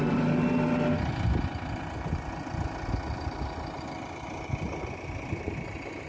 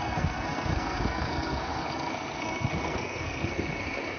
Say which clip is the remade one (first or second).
second